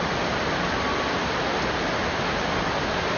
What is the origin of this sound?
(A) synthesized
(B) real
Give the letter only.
B